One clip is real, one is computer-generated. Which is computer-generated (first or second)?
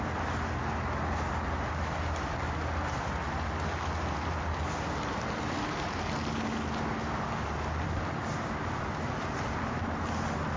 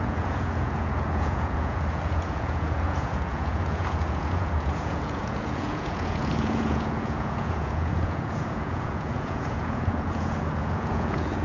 second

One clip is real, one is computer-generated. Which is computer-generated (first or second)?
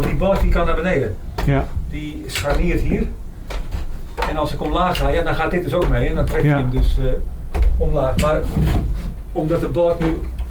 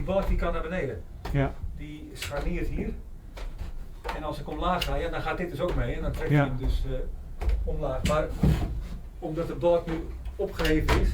second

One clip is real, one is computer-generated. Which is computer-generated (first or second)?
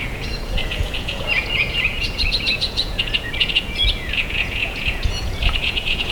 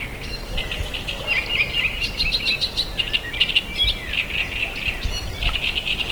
first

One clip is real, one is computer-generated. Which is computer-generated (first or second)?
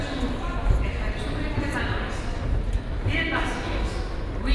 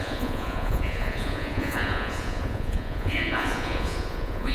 second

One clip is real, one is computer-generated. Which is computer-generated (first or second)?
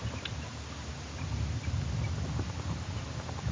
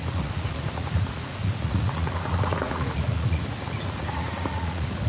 second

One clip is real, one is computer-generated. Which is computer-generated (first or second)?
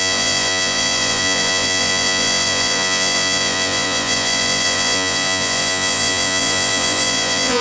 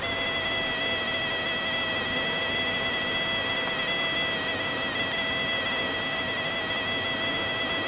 first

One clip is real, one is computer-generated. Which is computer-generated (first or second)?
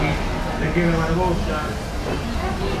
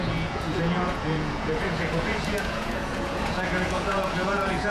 second